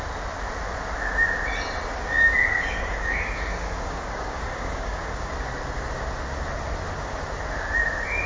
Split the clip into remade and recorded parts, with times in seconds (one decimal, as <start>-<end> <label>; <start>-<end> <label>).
0.0-2.5 recorded; 2.5-5.3 remade; 5.3-8.3 recorded